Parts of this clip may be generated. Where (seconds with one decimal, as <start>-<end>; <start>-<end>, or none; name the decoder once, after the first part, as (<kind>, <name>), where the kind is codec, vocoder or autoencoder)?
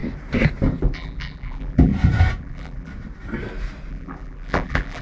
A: 0.8-1.9 (vocoder, BigVGAN v2); 2.4-2.9; 3.9-5.0